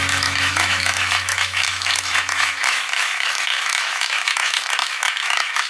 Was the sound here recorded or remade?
remade